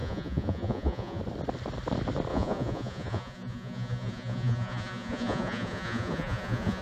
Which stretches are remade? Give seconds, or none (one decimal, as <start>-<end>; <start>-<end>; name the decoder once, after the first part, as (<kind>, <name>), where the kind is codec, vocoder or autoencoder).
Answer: 0.0-1.2 (vocoder, Vocos); 2.3-6.8